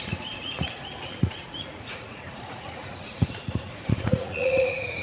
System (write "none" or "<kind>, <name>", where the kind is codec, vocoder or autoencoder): vocoder, Vocos